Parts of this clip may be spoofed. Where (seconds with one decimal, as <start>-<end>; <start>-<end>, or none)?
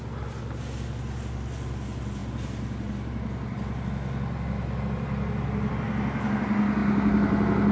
none